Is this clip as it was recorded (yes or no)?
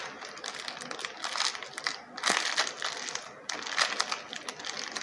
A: yes